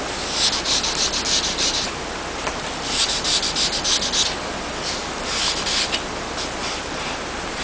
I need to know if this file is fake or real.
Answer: real